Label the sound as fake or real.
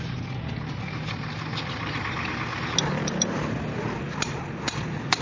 real